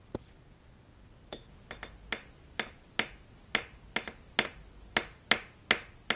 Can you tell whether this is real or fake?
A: real